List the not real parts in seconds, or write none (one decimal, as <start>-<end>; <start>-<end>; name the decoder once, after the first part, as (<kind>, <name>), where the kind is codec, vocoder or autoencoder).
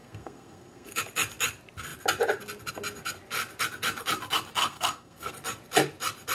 0.0-1.0 (codec, SNAC); 4.6-5.3